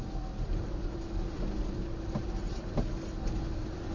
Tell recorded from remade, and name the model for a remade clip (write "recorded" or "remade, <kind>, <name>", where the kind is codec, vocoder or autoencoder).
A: recorded